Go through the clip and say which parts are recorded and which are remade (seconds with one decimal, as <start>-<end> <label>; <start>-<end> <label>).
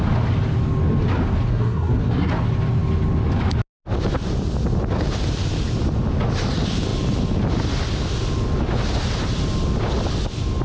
0.0-1.5 recorded; 1.5-2.3 remade; 2.3-10.6 recorded